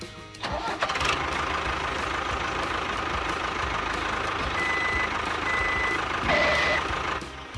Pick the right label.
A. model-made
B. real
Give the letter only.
B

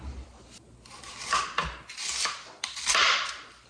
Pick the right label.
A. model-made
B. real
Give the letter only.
B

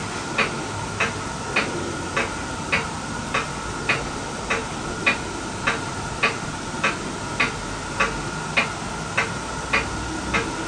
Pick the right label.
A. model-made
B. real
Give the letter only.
B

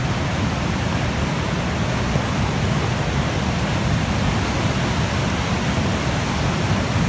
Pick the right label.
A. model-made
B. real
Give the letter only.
B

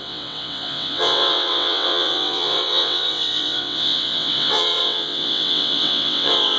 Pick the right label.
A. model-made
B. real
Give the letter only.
A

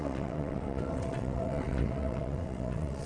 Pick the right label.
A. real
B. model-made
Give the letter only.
B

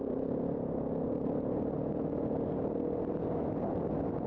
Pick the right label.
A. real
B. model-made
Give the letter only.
A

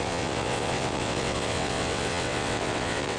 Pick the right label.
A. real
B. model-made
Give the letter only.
B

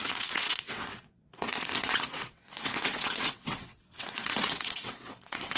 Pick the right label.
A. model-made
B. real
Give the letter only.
A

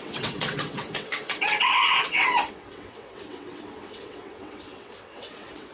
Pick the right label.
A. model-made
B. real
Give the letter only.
A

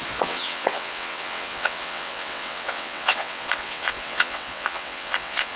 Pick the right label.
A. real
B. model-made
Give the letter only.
B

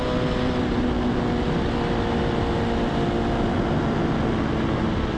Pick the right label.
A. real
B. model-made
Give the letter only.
A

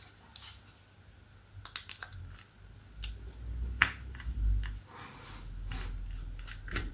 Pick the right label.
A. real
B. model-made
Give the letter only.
A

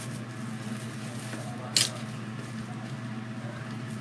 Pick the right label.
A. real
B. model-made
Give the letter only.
A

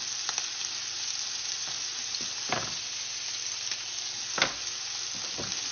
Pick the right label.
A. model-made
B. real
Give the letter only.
B